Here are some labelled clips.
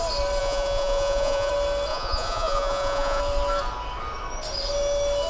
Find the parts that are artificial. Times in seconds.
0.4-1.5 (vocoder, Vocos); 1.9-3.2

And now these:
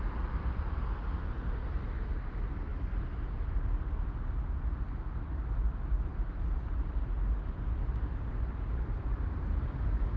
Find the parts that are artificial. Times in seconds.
none